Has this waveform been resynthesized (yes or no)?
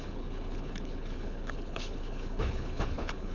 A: yes